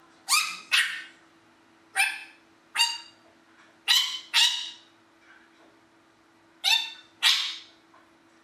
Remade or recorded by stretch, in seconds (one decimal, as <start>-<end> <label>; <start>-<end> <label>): 0.0-8.4 recorded